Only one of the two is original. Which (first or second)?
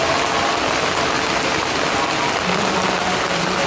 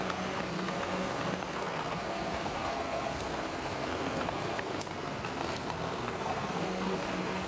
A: first